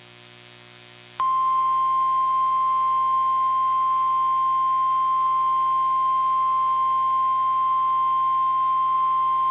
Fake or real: real